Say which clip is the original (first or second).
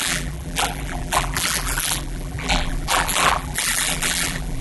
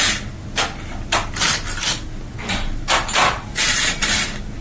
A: second